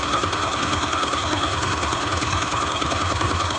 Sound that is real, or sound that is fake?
fake